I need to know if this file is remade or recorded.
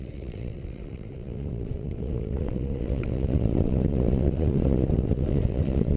remade